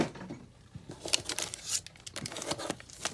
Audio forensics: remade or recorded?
recorded